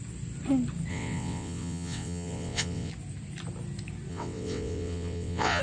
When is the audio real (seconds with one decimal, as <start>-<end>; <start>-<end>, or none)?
0.0-0.9; 2.9-4.1

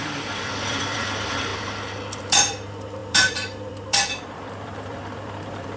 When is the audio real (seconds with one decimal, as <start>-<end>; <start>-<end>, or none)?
1.5-2.2

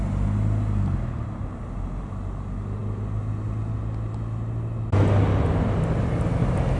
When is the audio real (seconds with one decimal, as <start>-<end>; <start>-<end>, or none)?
0.0-6.8